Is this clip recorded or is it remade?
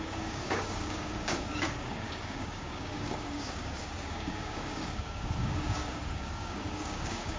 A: remade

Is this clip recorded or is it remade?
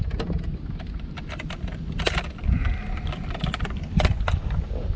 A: recorded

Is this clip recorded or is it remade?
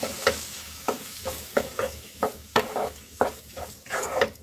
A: remade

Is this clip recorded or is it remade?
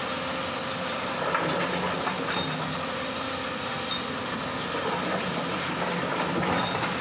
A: recorded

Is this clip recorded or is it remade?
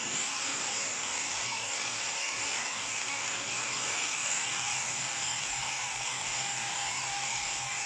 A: remade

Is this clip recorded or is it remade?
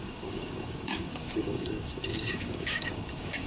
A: remade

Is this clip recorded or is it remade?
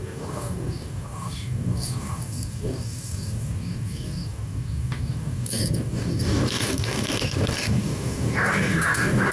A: remade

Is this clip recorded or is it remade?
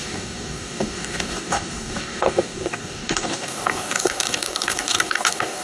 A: remade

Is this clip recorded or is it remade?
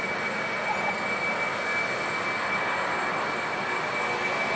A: recorded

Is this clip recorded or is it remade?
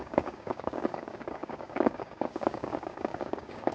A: remade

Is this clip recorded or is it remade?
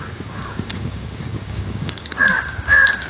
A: remade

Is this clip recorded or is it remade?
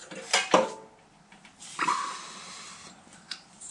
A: recorded